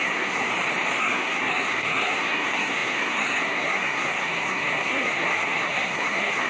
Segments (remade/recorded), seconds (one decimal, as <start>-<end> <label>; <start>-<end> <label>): 0.0-0.5 remade; 0.5-1.0 recorded; 1.0-6.5 remade